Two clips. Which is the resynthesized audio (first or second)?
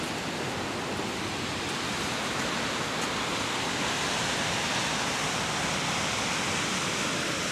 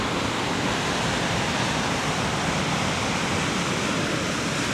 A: second